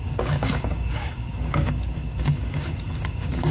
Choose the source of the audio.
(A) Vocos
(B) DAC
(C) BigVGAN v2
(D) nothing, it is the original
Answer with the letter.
B